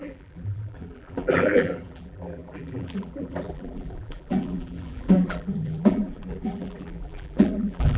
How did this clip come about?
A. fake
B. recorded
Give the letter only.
A